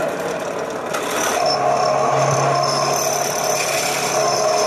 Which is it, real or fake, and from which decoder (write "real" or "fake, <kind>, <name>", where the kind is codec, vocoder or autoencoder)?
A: real